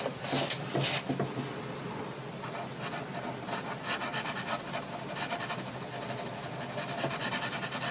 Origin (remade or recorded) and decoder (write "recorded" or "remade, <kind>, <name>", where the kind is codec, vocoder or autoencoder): recorded